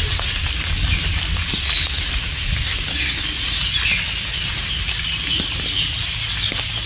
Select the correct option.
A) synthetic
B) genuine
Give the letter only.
B